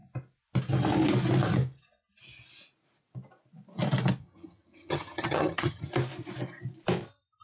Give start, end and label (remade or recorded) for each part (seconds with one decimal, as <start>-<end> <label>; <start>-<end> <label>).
0.0-4.2 recorded; 4.2-5.9 remade; 5.9-7.4 recorded